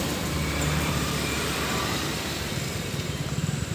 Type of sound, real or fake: fake